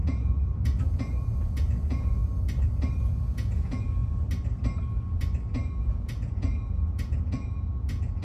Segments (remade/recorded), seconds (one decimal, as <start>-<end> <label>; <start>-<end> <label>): 0.0-2.2 remade; 2.2-3.0 recorded; 3.0-4.0 remade; 4.0-5.9 recorded; 5.9-8.2 remade